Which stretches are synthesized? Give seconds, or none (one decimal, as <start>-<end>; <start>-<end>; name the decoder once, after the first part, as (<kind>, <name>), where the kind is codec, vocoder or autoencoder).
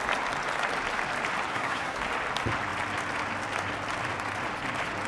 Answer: 1.5-2.0 (codec, SNAC)